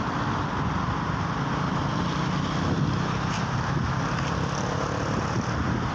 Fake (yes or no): no